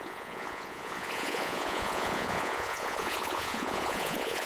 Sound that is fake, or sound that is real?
fake